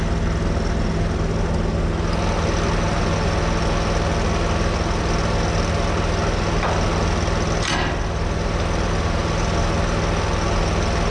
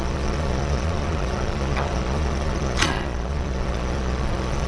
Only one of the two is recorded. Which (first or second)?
first